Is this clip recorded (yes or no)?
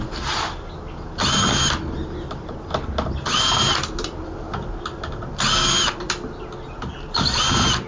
yes